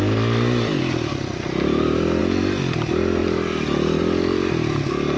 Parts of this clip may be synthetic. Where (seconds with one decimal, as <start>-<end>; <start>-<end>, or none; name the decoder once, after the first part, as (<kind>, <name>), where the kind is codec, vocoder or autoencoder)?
none